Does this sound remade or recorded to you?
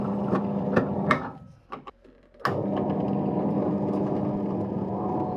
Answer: recorded